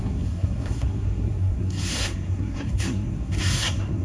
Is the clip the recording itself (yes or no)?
no